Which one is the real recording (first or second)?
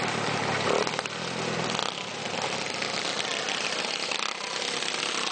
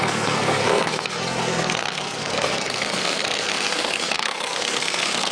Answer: first